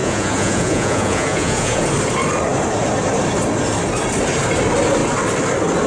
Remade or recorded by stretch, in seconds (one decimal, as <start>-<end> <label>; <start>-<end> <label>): 0.0-1.8 remade; 1.8-5.9 recorded